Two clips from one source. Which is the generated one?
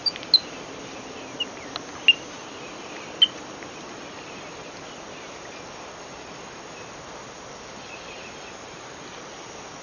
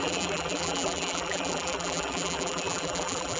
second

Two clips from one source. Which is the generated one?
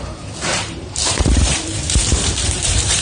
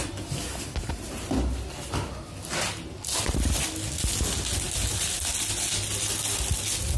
first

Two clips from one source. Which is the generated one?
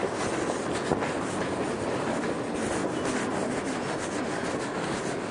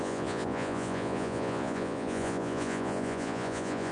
second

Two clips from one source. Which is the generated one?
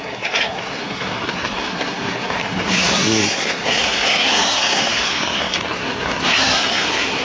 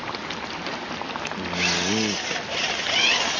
first